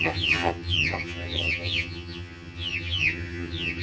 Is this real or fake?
fake